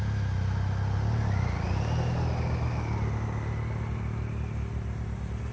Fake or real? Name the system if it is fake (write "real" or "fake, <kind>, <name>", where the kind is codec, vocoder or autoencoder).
real